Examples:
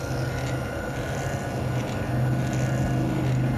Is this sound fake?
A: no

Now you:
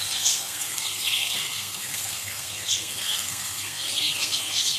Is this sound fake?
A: yes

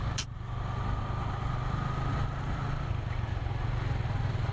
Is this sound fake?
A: no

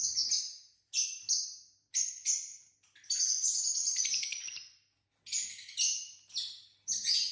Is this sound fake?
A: no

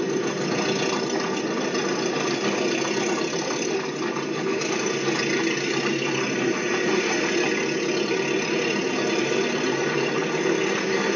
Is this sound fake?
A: no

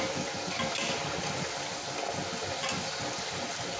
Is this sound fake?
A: no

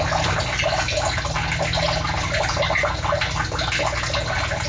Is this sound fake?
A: no